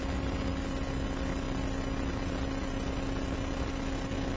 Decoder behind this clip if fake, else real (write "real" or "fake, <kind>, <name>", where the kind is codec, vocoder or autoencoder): real